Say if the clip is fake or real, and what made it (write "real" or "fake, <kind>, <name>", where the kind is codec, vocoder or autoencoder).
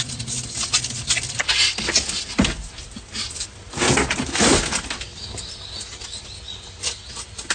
real